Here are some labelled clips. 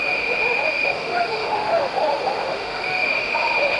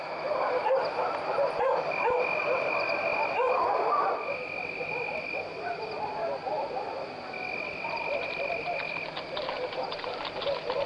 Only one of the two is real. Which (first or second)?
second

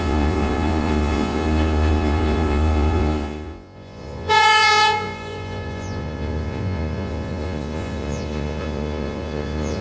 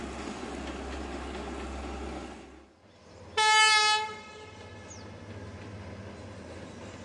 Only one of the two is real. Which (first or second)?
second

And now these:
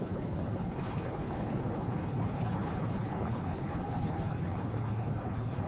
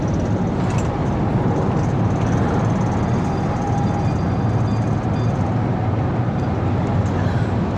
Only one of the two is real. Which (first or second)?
second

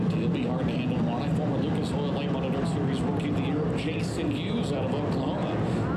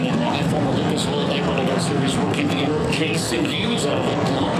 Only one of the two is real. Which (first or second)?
first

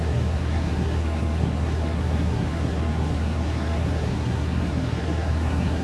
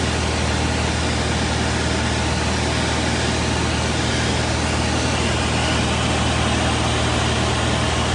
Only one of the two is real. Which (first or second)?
second